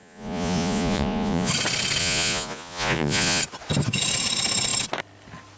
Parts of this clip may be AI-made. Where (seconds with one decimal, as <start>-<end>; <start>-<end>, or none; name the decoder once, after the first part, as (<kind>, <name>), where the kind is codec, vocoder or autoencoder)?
0.0-1.5 (vocoder, Vocos); 2.0-3.4